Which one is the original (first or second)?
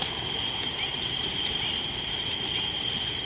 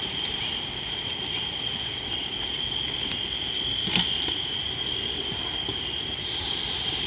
second